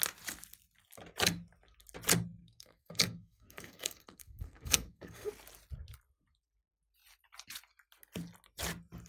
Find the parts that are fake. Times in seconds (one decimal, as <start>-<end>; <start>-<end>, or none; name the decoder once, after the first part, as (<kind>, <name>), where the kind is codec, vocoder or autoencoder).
2.4-5.3 (codec, SNAC)